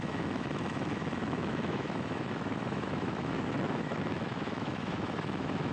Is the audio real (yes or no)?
no